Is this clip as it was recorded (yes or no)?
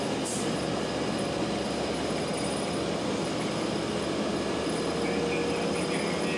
yes